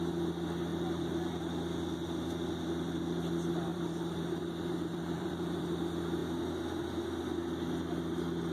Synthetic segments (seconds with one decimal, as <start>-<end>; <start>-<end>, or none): 0.7-1.4; 3.7-4.4; 4.9-5.6